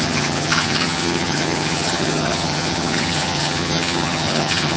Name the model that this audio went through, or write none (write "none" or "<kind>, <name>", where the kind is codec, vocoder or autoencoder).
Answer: vocoder, HiFi-GAN